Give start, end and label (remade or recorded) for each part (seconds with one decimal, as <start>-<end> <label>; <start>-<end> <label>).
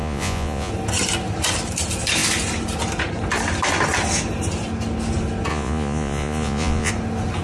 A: 0.0-0.7 remade; 0.7-5.5 recorded; 5.5-6.9 remade; 6.9-7.4 recorded